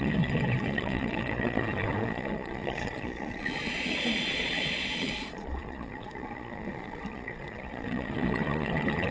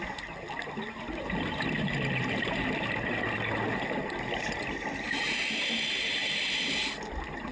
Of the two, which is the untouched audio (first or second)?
second